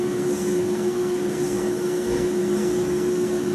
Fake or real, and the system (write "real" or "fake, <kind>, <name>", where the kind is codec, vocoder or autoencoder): fake, codec, SNAC